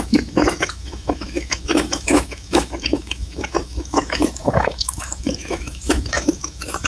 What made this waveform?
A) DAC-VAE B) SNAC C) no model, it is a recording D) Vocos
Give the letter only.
A